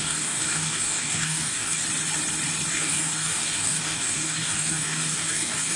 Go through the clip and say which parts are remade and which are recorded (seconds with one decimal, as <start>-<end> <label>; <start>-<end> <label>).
0.0-1.8 remade; 1.8-2.7 recorded; 2.7-5.8 remade